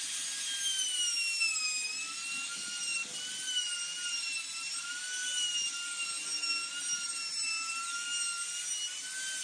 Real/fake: real